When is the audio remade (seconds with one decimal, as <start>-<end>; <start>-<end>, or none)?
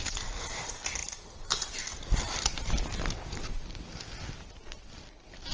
none